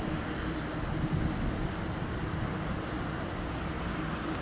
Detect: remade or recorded recorded